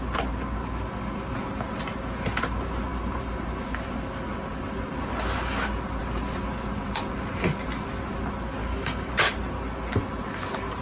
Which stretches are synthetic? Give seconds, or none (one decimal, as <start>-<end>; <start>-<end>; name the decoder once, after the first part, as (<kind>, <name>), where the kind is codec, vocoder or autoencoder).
8.6-9.1 (codec, DAC)

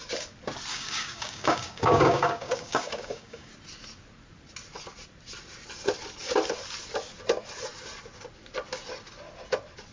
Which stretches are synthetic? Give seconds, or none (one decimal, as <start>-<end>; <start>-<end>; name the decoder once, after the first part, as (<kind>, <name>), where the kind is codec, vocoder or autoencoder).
0.7-3.5 (codec, DAC)

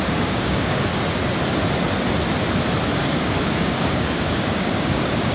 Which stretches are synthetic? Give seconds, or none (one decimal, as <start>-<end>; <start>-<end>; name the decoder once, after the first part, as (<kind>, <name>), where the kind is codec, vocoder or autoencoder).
0.0-0.9 (codec, DAC); 3.0-5.3

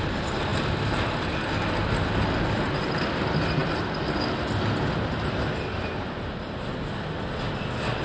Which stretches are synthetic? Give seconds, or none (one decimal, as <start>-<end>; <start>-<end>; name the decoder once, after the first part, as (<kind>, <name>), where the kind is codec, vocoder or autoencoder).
none

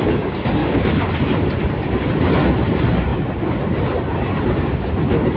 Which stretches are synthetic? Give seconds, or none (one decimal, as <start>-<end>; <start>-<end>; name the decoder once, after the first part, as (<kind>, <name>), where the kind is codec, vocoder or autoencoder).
0.6-1.1 (codec, DAC)

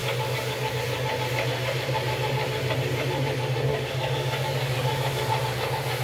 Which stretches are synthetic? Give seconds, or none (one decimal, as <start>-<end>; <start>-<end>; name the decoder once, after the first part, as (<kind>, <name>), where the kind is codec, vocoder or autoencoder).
0.0-0.7 (codec, DAC); 3.7-5.3

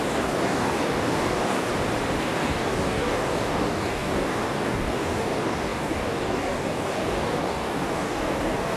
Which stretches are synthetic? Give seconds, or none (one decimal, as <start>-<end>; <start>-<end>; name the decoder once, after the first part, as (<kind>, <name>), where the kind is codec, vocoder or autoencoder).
0.0-1.7 (codec, DAC); 2.2-8.8